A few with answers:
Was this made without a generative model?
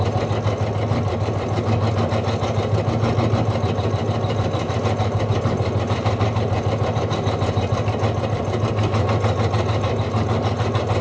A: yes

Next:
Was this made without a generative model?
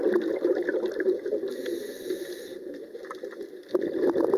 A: yes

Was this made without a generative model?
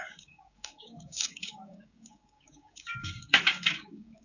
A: no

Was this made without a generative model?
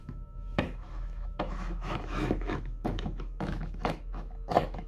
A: no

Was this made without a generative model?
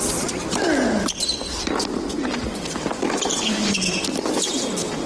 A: yes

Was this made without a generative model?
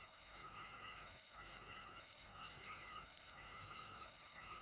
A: no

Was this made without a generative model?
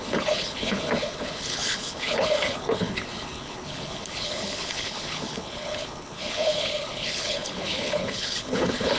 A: no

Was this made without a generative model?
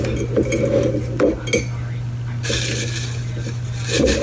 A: yes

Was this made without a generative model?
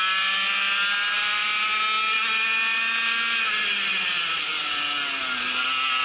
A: yes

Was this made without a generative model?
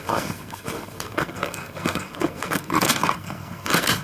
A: no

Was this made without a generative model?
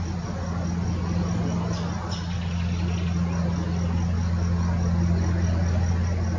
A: yes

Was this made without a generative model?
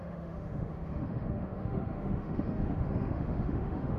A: no